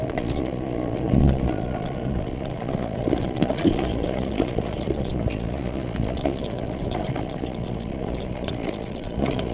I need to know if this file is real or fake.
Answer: fake